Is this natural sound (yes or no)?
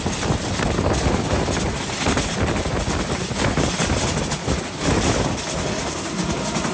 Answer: yes